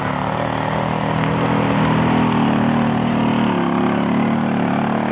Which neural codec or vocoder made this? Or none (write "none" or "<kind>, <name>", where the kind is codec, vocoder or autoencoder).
none